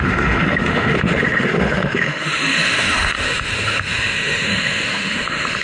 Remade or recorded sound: remade